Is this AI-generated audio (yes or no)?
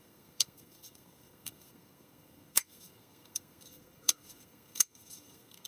yes